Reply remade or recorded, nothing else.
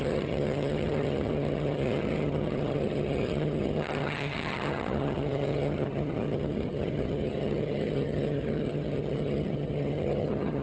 remade